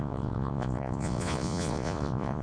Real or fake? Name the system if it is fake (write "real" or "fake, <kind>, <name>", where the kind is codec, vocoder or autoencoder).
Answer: fake, vocoder, Vocos